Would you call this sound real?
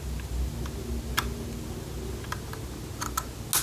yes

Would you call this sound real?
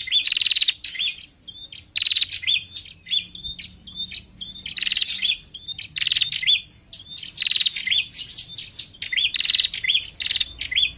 yes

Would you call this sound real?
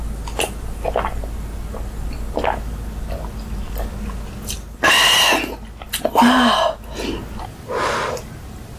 yes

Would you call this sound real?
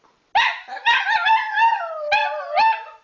yes